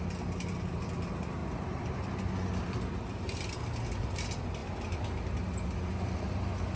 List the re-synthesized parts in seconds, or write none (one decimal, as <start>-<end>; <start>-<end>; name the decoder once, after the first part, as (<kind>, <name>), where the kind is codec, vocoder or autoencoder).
none